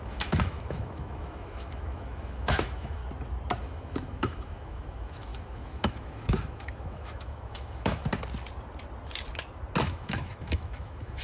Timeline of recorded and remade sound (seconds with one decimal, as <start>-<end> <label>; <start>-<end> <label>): 0.0-3.0 remade; 3.0-3.6 recorded; 3.6-8.0 remade; 8.0-9.8 recorded; 9.8-11.2 remade